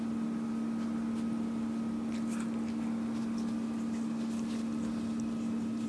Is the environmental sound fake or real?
real